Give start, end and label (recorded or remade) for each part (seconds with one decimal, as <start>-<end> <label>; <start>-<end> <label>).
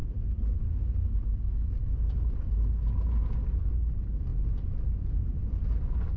0.0-4.3 recorded; 4.3-5.6 remade; 5.6-6.2 recorded